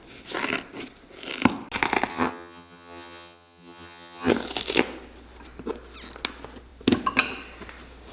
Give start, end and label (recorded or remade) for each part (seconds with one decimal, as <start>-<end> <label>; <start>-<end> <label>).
0.0-2.1 recorded; 2.1-4.3 remade; 4.3-8.1 recorded